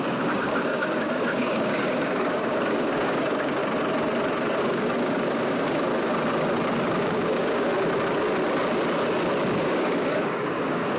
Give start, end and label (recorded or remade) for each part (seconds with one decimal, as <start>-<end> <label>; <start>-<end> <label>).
0.0-3.6 remade; 3.6-4.6 recorded; 4.6-5.9 remade; 5.9-7.1 recorded; 7.1-7.7 remade; 7.7-9.6 recorded; 9.6-11.0 remade